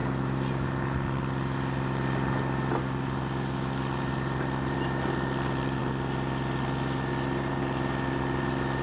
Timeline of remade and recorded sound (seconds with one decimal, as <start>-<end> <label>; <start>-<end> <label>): 0.0-8.8 recorded

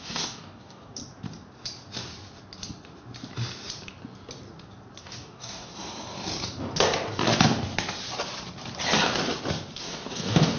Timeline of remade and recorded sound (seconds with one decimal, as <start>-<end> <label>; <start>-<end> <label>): 0.0-1.0 remade; 1.0-5.0 recorded; 5.0-5.7 remade; 5.7-9.8 recorded; 9.8-10.6 remade

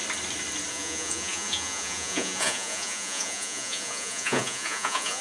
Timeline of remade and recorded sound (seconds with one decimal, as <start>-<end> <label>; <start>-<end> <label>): 0.0-0.7 recorded; 0.7-5.2 remade

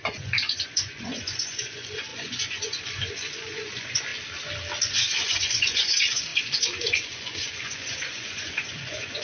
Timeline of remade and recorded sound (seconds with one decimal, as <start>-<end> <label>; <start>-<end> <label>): 0.0-4.1 remade; 4.1-4.9 recorded; 4.9-9.2 remade

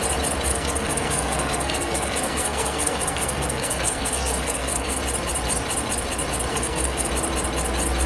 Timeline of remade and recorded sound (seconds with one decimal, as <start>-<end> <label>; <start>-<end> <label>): 0.0-0.5 recorded; 0.5-5.0 remade; 5.0-6.5 recorded; 6.5-7.1 remade; 7.1-8.1 recorded